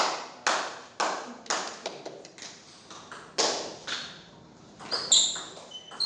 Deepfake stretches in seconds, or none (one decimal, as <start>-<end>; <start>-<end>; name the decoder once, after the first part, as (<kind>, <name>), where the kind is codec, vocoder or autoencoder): none